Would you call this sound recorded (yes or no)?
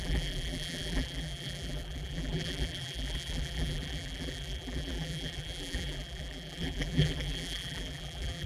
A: no